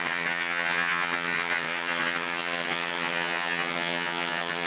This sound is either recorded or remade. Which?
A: remade